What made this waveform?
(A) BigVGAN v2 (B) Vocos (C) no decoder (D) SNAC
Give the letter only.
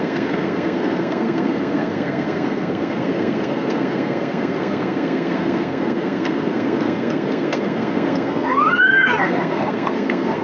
D